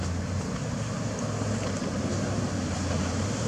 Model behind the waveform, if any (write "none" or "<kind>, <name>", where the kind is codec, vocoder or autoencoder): none